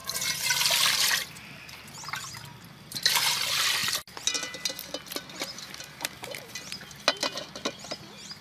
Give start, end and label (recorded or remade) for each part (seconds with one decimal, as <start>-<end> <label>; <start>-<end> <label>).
0.0-8.4 recorded